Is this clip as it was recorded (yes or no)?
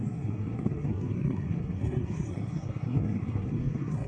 no